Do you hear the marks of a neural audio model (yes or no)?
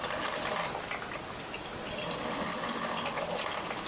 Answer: no